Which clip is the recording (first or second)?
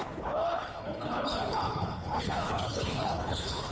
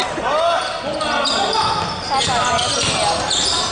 second